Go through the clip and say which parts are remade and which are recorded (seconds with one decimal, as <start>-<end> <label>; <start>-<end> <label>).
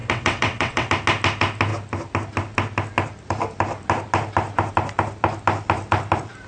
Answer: 0.0-0.9 remade; 0.9-6.5 recorded